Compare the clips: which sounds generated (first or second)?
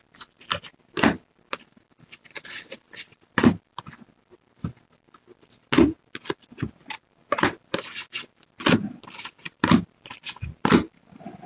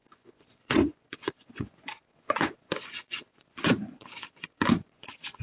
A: second